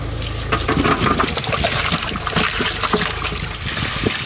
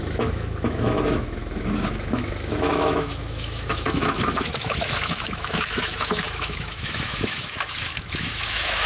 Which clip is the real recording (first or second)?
first